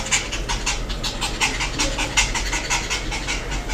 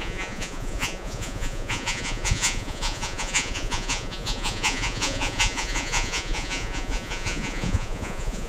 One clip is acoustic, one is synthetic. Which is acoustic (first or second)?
first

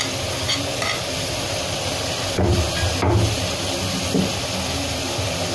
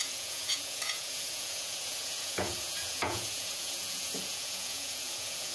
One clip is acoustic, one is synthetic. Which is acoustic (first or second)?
first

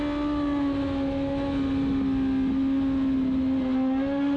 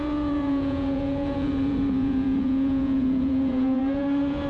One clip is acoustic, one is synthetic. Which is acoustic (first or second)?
first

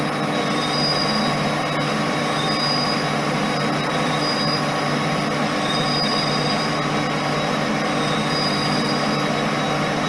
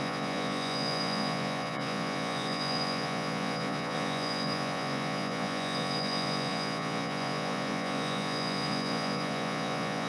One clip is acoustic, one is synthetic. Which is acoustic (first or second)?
first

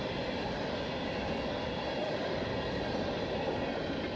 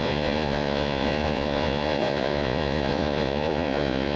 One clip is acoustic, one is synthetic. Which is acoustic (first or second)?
first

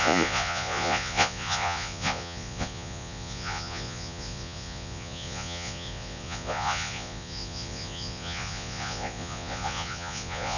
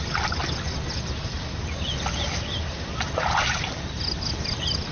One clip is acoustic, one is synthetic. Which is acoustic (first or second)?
second